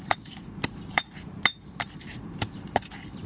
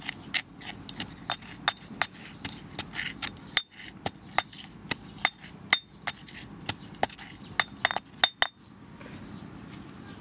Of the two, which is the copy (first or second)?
first